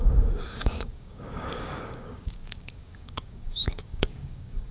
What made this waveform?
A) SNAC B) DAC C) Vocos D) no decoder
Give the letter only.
B